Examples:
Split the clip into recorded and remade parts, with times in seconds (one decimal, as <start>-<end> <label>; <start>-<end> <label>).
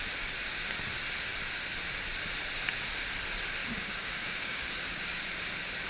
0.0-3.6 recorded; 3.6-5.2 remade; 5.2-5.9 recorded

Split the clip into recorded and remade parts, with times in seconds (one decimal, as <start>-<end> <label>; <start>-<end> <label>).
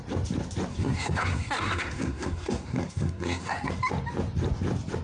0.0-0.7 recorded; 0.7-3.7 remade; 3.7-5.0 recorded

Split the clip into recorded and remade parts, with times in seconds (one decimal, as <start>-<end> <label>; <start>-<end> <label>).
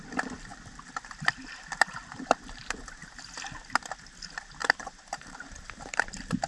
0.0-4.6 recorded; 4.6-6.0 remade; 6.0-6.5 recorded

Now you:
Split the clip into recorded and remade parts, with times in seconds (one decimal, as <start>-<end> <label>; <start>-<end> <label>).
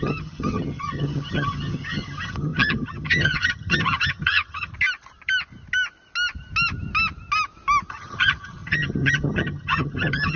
0.0-4.7 remade; 4.7-7.9 recorded; 7.9-10.4 remade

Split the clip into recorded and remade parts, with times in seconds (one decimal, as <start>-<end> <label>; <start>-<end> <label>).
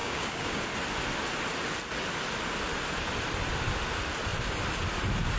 0.0-0.6 remade; 0.6-5.4 recorded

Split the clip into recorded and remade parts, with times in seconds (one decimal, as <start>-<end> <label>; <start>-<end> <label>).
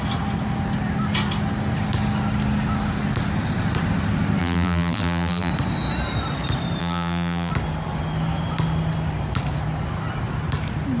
0.0-4.4 recorded; 4.4-5.5 remade; 5.5-6.8 recorded; 6.8-7.5 remade; 7.5-11.0 recorded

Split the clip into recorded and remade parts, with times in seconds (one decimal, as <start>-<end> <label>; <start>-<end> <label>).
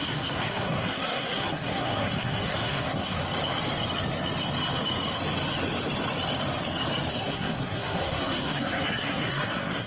0.0-3.2 remade; 3.2-7.1 recorded; 7.1-9.9 remade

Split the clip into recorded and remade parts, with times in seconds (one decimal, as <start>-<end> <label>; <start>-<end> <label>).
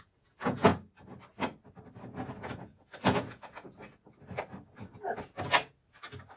0.0-0.7 remade; 0.7-2.3 recorded; 2.3-3.7 remade; 3.7-6.4 recorded